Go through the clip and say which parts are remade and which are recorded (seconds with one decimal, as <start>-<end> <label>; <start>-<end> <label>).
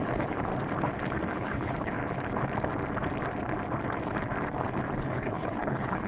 0.0-0.5 remade; 0.5-1.3 recorded; 1.3-2.0 remade; 2.0-5.0 recorded; 5.0-6.1 remade